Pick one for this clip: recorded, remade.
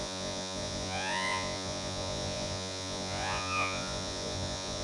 remade